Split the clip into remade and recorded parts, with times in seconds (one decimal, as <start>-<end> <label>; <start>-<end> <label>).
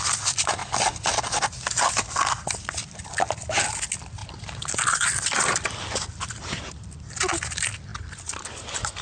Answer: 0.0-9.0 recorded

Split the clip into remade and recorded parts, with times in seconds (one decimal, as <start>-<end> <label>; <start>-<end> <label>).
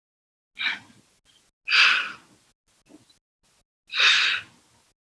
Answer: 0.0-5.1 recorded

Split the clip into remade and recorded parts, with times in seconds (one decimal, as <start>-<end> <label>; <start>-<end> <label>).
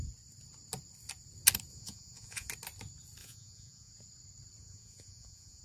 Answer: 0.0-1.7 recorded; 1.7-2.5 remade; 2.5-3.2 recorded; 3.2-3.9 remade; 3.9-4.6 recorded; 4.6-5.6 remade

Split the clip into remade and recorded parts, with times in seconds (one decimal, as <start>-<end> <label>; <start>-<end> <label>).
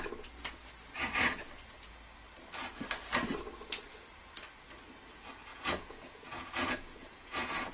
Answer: 0.0-5.5 recorded; 5.5-7.7 remade